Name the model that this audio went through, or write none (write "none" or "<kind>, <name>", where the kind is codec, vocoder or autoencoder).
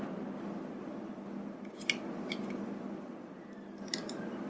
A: none